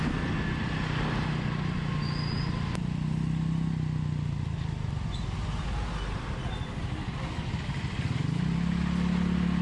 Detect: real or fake real